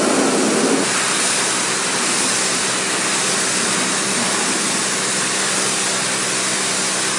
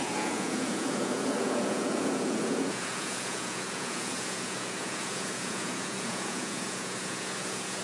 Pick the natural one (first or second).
first